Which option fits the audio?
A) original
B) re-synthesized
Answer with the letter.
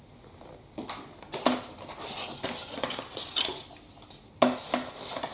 A